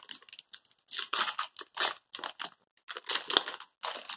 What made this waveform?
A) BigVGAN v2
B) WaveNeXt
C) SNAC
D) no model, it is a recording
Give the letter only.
D